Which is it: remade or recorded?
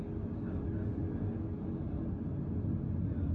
recorded